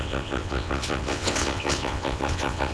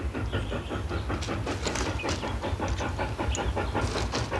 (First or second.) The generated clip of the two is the first